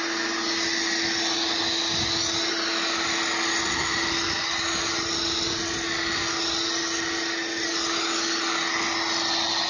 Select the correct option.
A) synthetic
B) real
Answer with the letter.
B